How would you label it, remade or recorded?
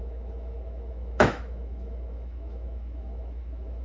remade